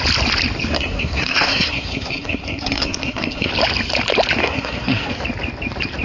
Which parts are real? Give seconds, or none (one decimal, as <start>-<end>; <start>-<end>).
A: 0.0-0.7; 3.5-4.4; 5.1-6.0